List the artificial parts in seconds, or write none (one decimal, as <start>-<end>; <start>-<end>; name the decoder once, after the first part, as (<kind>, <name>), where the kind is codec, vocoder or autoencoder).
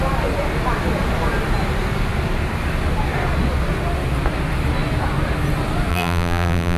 5.9-6.8 (vocoder, BigVGAN v2)